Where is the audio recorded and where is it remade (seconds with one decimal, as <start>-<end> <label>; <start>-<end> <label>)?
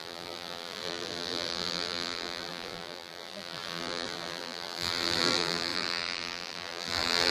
0.0-7.3 remade